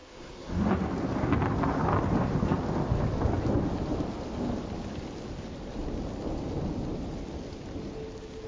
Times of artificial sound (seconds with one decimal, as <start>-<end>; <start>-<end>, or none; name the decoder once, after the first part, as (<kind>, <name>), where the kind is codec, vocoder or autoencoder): 0.0-0.7 (codec, SNAC)